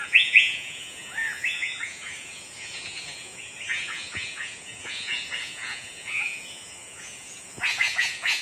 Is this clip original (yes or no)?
no